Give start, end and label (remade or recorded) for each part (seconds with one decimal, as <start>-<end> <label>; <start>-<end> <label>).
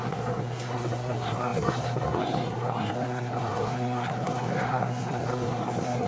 0.0-6.1 remade